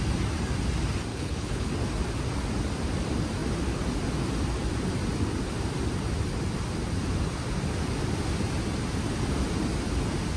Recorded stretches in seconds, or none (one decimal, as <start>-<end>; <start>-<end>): 0.0-1.1; 1.7-10.4